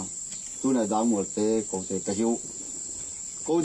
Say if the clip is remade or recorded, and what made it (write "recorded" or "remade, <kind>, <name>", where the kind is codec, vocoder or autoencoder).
recorded